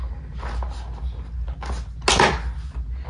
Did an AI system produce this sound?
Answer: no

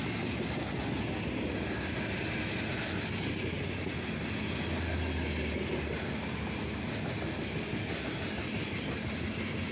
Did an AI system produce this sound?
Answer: no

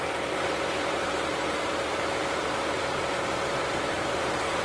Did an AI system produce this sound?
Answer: yes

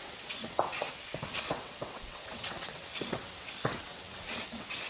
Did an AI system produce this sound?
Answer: yes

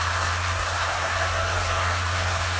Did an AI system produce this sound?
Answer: yes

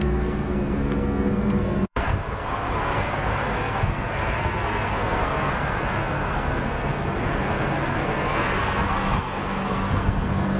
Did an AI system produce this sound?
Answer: yes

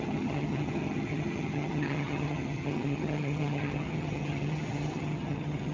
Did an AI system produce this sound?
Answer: yes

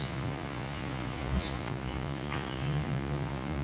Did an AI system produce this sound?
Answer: yes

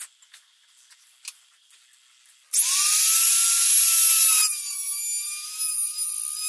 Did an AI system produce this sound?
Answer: no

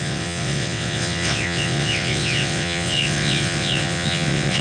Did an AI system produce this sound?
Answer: yes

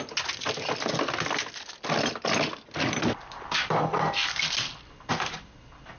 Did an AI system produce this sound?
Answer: no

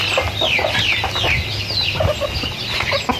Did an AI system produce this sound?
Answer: no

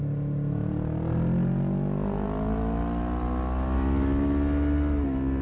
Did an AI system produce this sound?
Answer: no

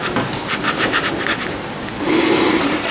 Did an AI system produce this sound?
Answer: no